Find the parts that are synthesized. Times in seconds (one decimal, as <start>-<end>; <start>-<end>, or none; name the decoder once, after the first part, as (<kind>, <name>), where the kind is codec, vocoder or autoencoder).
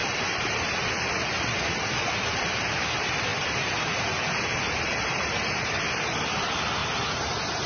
0.0-1.1 (vocoder, BigVGAN v2); 3.3-4.0; 4.9-5.7; 6.8-7.7